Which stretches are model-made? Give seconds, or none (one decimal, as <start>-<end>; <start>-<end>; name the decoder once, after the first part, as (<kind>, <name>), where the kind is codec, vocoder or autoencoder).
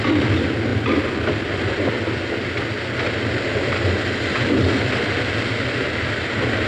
none